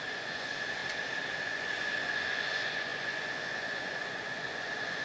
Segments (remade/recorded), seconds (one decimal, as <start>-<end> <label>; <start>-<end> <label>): 0.0-0.8 remade; 0.8-1.4 recorded; 1.4-5.0 remade